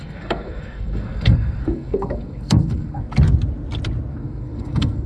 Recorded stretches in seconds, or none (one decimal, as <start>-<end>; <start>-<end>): 3.1-4.1